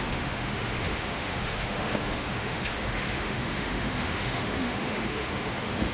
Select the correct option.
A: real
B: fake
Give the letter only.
B